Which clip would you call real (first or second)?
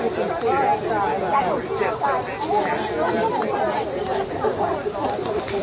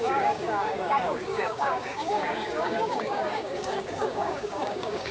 first